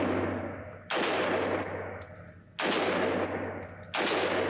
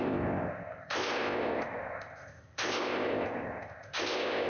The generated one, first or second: second